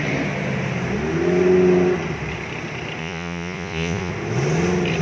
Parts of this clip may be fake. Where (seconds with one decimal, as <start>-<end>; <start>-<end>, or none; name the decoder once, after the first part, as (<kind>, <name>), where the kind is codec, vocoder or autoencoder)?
3.0-4.1 (vocoder, Vocos)